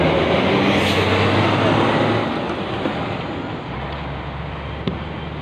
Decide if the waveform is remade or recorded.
recorded